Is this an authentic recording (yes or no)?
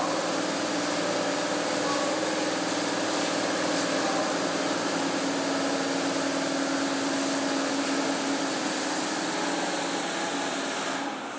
yes